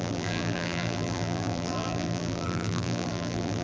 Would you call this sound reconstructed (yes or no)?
yes